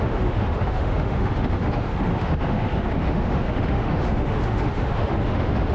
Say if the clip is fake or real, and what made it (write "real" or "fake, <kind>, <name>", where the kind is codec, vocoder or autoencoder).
fake, autoencoder, DAC-VAE